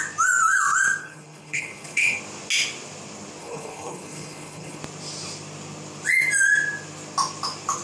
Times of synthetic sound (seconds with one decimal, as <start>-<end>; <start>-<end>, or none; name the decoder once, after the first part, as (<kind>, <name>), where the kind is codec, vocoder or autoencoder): 1.0-2.2 (codec, HILCodec); 3.4-4.8